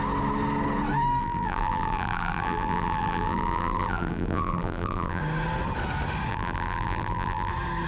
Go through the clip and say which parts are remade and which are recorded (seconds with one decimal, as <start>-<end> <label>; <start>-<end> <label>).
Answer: 0.0-1.2 recorded; 1.2-5.2 remade; 5.2-6.3 recorded; 6.3-7.5 remade; 7.5-7.9 recorded